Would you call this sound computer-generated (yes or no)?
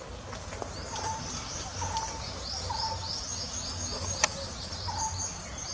no